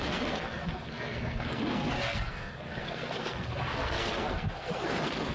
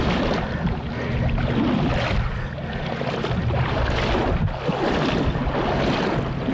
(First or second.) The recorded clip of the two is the second